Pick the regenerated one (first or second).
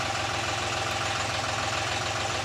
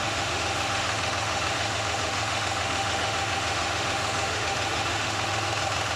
second